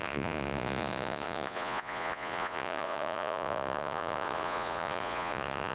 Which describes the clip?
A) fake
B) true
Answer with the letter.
A